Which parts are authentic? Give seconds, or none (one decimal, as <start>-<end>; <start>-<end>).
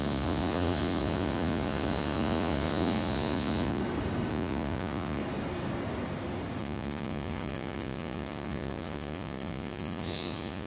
3.8-4.3; 5.2-6.6